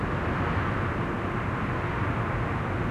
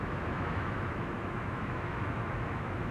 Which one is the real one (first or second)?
first